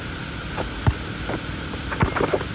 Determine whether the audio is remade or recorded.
recorded